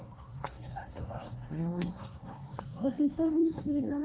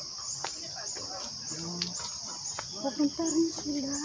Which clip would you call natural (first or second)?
second